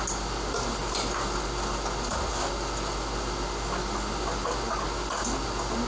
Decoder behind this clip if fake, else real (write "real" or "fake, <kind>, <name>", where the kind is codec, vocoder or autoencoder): real